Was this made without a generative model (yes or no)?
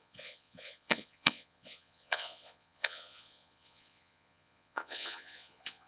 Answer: no